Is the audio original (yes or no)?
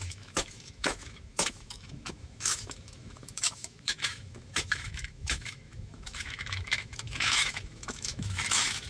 no